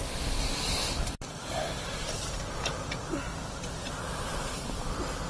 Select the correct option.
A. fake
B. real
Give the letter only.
B